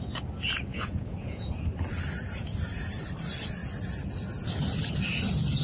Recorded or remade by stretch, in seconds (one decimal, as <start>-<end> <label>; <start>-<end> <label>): 0.0-0.7 recorded; 0.7-1.5 remade; 1.5-5.6 recorded